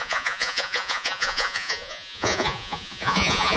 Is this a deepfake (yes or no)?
yes